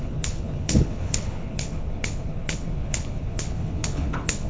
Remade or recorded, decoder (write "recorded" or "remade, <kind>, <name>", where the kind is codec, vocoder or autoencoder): remade, codec, HILCodec